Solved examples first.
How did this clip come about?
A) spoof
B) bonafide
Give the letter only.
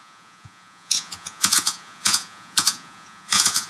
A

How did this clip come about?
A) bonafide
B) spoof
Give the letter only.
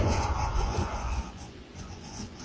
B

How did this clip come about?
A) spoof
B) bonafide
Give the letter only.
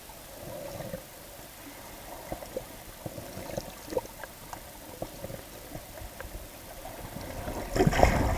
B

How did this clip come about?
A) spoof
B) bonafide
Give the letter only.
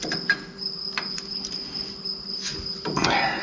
B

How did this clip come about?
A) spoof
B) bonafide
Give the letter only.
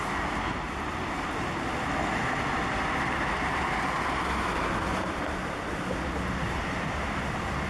B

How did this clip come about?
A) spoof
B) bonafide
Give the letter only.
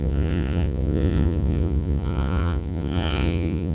A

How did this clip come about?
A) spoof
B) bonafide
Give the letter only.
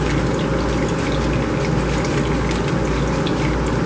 B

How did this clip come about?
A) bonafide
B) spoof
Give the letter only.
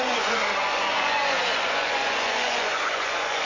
B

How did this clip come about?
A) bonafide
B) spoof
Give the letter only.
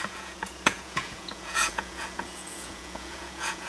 B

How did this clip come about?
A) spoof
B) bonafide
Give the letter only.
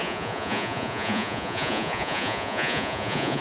A